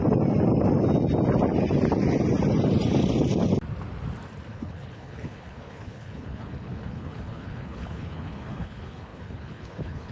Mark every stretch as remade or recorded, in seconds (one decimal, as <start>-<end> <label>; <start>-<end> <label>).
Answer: 0.0-4.5 recorded; 4.5-10.1 remade